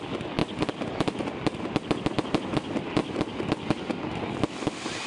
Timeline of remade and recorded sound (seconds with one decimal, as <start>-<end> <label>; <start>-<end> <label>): 0.0-5.1 recorded